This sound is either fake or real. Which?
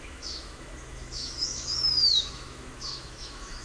fake